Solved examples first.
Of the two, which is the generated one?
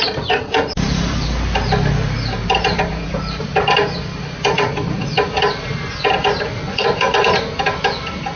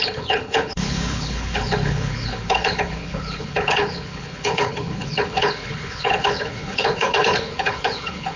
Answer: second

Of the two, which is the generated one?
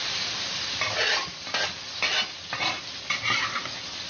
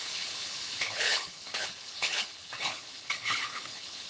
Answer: second